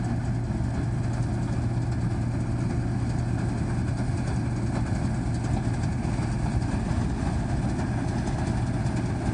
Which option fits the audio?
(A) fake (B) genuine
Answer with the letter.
B